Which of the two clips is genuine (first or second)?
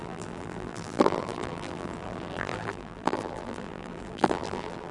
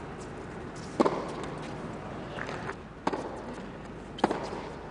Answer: second